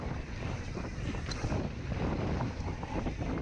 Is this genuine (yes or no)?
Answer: yes